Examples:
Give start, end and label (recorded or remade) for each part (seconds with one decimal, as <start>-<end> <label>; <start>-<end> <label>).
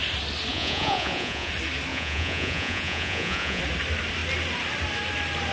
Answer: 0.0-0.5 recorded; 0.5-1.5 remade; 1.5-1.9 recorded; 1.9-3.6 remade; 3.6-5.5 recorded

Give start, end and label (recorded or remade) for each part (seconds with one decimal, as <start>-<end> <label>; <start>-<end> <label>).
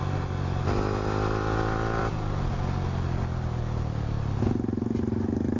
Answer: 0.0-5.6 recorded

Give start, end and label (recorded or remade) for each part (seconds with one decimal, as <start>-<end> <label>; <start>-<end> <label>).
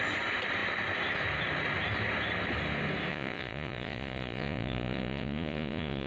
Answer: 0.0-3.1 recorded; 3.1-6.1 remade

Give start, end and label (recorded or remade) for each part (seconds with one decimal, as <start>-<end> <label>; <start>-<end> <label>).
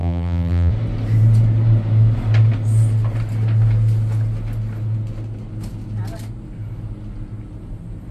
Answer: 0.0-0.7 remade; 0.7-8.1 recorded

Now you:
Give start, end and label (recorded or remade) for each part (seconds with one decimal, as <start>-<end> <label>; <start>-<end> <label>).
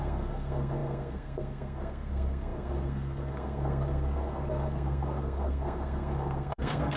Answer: 0.0-7.0 remade